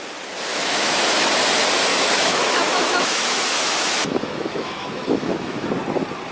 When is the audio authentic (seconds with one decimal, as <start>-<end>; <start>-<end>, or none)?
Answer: 0.0-0.5; 1.3-1.9; 5.7-6.3

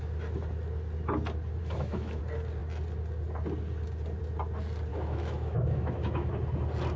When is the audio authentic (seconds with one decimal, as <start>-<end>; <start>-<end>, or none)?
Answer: 0.0-1.6; 2.2-4.9; 6.3-7.0

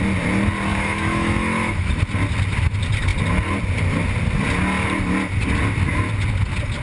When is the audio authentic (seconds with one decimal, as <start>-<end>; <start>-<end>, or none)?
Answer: 0.0-0.7; 2.0-6.8

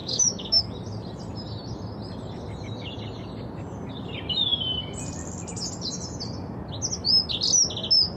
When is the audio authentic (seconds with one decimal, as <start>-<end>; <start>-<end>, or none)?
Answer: 0.6-8.2